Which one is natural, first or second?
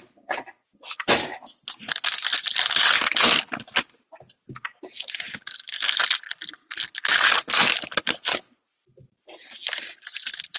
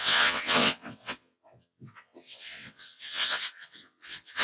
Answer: first